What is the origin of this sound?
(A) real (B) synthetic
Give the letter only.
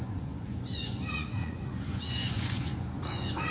B